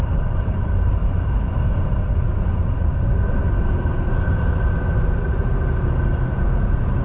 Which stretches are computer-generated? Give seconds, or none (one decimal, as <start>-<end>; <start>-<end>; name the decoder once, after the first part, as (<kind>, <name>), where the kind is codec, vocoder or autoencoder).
1.0-1.7 (autoencoder, DAC-VAE)